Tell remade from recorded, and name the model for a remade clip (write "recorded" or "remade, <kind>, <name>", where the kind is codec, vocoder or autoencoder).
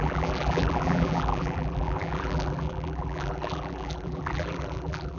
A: remade, vocoder, BigVGAN v2